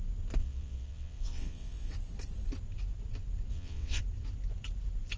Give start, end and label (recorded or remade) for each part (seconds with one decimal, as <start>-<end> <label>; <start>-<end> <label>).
0.0-0.4 recorded; 0.4-1.9 remade; 1.9-3.5 recorded; 3.5-4.0 remade; 4.0-5.2 recorded